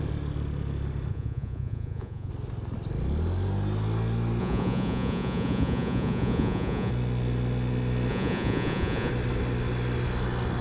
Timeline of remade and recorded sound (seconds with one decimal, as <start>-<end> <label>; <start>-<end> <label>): 0.0-1.1 recorded; 1.1-2.3 remade; 2.3-4.4 recorded; 4.4-6.9 remade; 6.9-8.1 recorded; 8.1-9.1 remade; 9.1-10.6 recorded